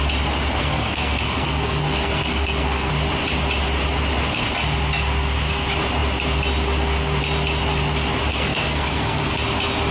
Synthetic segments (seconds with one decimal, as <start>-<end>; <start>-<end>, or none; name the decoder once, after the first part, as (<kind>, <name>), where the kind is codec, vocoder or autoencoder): 0.6-2.9 (codec, SNAC); 8.3-9.3